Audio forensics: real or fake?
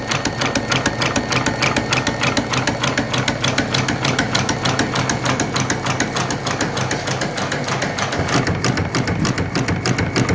real